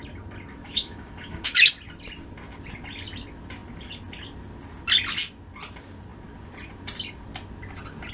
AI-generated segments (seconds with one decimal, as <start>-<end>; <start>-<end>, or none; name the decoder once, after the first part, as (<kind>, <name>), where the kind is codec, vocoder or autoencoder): 0.5-1.7 (autoencoder, DAC-VAE)